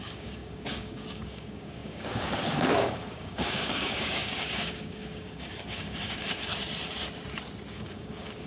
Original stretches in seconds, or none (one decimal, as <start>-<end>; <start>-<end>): 6.5-7.7